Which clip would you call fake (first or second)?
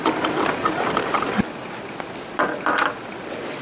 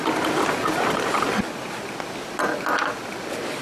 first